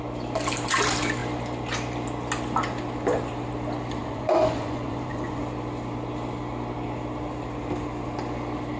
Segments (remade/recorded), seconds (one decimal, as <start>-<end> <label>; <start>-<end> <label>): 0.0-4.0 recorded; 4.0-5.4 remade; 5.4-8.8 recorded